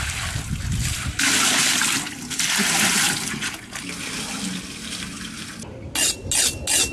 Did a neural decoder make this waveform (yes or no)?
no